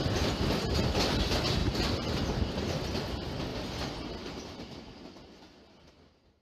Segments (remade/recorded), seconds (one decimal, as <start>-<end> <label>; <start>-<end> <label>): 0.0-1.6 recorded; 1.6-2.2 remade; 2.2-6.4 recorded

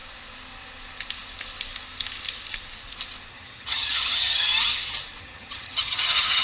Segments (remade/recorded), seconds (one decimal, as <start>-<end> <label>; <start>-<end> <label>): 0.0-3.3 recorded; 3.3-4.5 remade; 4.5-5.2 recorded; 5.2-6.4 remade

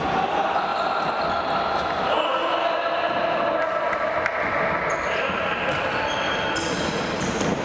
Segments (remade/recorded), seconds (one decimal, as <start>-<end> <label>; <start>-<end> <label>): 0.0-7.6 recorded

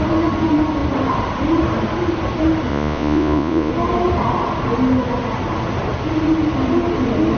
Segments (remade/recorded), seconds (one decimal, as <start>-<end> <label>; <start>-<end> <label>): 0.0-2.7 recorded; 2.7-3.7 remade; 3.7-7.4 recorded

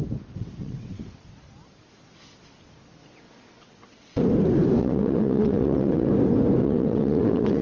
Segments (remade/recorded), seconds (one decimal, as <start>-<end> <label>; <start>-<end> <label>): 0.0-0.4 recorded; 0.4-1.3 remade; 1.3-3.0 recorded; 3.0-4.2 remade; 4.2-4.8 recorded; 4.8-6.1 remade; 6.1-6.6 recorded; 6.6-7.6 remade